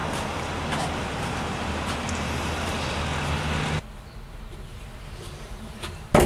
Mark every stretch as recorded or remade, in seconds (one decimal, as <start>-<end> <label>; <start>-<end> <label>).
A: 0.0-1.0 recorded; 1.0-3.1 remade; 3.1-4.4 recorded; 4.4-6.3 remade